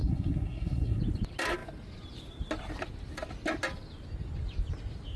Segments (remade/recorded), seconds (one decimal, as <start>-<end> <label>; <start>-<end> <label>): 0.0-1.0 remade; 1.0-5.2 recorded